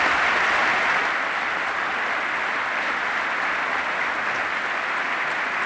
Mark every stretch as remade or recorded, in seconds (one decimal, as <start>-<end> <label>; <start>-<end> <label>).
0.0-5.7 recorded